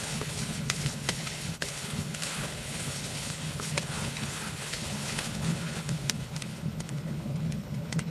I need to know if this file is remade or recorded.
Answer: remade